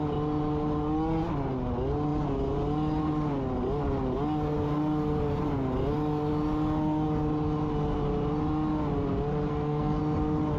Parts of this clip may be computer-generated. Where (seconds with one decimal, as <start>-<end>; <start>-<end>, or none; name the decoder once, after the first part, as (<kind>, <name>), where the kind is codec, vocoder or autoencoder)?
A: 9.5-10.0 (codec, SNAC)